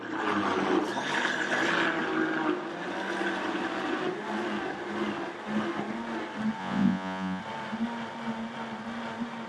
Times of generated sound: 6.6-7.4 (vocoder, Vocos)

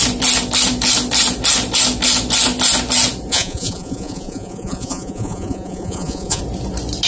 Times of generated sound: 3.3-6.4 (vocoder, Vocos)

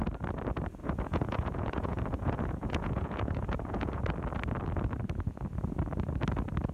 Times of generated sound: 0.8-4.0 (vocoder, Vocos)

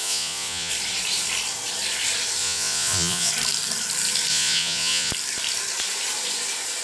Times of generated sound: 0.0-0.7 (vocoder, Vocos); 2.4-3.3; 4.3-5.1

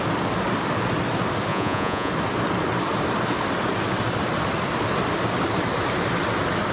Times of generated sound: 1.5-2.1 (vocoder, Vocos)

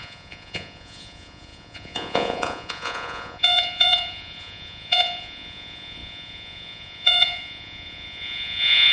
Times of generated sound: 0.0-8.9 (vocoder, Vocos)